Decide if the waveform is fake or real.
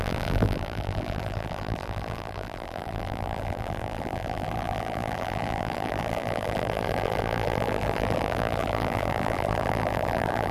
fake